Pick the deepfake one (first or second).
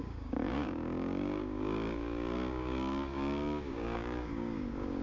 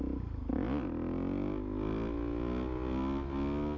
first